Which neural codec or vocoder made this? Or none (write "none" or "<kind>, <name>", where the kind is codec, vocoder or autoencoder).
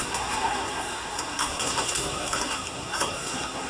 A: codec, SNAC